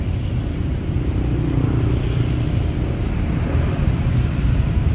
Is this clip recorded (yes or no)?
no